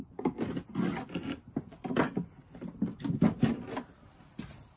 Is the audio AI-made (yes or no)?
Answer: no